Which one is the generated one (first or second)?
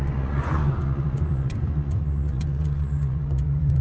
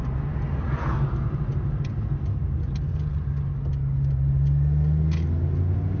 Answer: first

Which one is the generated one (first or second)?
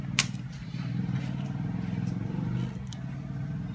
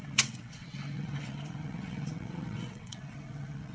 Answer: second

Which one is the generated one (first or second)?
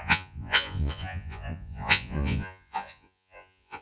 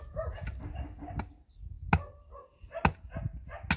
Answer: first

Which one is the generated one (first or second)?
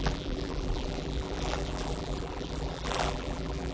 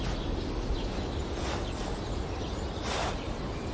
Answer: first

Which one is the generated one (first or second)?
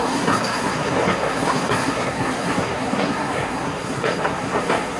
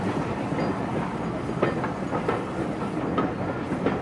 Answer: first